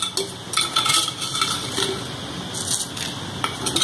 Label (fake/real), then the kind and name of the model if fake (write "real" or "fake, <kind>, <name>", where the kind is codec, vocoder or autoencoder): real